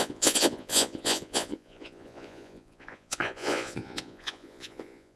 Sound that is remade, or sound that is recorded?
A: remade